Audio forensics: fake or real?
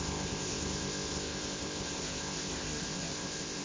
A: fake